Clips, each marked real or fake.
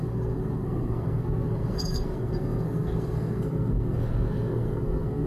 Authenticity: fake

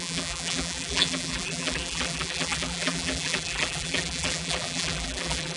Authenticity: fake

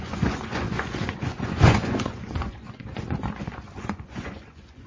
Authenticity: fake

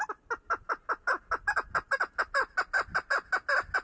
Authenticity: real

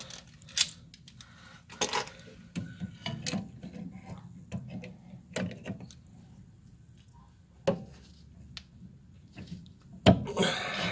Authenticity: real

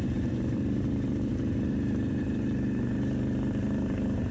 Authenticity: fake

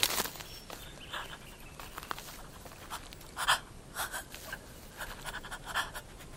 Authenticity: real